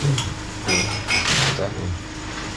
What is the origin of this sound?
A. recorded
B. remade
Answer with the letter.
A